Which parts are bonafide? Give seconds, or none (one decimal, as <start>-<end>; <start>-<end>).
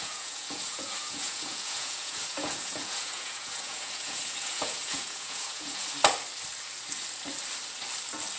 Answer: 5.8-8.4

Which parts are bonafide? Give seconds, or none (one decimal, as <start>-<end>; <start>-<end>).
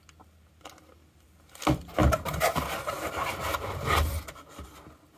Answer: 0.0-5.2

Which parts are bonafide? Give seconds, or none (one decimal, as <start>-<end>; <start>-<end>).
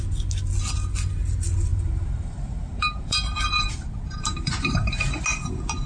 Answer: 0.0-1.7; 5.2-5.9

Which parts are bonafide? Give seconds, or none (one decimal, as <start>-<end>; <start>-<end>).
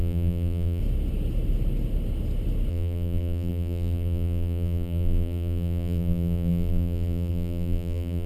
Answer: 0.8-2.7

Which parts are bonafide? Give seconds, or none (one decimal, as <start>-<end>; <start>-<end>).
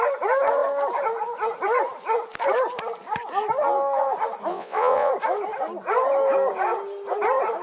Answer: 0.0-4.5; 5.1-7.6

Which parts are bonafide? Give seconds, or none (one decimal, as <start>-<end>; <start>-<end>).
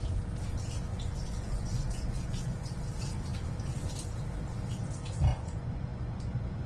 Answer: 0.0-0.9; 2.8-5.3